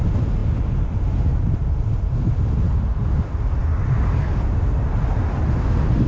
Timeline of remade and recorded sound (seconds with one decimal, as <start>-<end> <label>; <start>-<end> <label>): 0.0-6.1 recorded